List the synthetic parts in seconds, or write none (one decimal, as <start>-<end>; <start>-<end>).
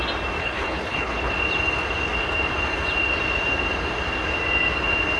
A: 0.4-1.3